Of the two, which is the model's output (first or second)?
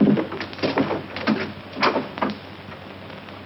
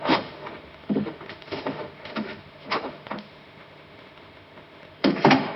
second